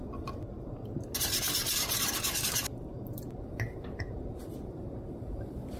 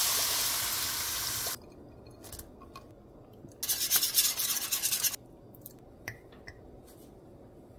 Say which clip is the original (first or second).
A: second